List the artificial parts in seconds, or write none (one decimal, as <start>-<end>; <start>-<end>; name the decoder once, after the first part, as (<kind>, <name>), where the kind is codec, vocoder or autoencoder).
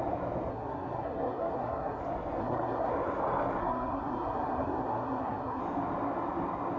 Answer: 0.5-2.0 (codec, SNAC); 2.4-2.9; 3.6-5.6